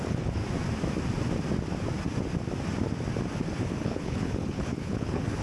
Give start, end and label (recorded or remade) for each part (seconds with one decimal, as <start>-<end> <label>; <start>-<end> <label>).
0.0-0.4 remade; 0.4-3.6 recorded; 3.6-5.4 remade